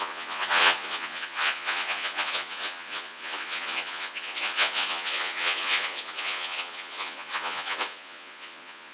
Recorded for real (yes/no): no